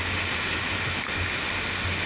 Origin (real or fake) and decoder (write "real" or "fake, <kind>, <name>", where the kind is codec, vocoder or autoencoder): real